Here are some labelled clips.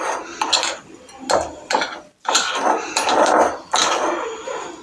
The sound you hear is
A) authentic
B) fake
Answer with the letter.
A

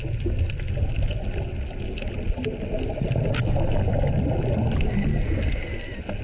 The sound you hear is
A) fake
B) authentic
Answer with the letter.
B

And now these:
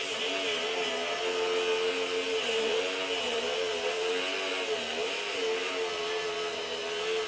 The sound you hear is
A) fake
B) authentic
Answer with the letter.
B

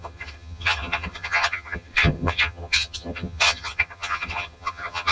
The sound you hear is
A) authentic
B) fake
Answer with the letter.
B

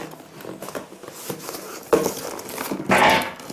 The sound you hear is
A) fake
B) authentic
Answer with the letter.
B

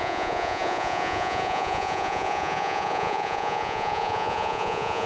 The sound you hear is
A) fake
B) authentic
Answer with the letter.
A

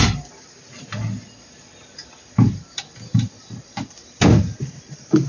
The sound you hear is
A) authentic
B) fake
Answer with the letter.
A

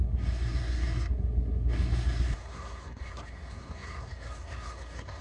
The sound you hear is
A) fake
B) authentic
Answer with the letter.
A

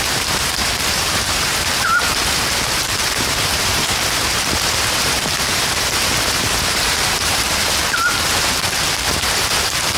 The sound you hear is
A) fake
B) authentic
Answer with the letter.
A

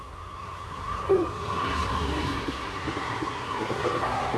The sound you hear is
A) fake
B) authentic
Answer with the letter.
A